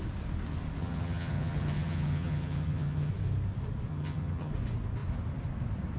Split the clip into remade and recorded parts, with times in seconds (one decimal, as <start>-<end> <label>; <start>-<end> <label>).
0.0-0.8 recorded; 0.8-3.1 remade; 3.1-3.9 recorded; 3.9-4.5 remade; 4.5-6.0 recorded